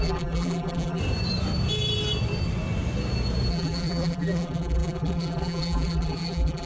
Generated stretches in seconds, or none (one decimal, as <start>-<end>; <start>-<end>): 0.0-1.0; 3.5-6.7